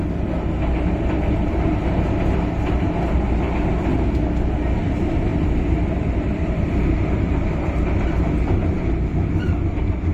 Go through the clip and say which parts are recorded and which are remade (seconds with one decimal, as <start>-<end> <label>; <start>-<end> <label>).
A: 0.0-5.3 recorded; 5.3-6.7 remade; 6.7-10.1 recorded